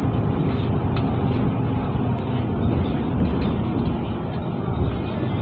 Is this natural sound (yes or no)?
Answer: yes